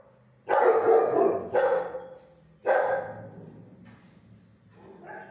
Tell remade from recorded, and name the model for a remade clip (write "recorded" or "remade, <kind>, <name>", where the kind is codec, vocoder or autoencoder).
recorded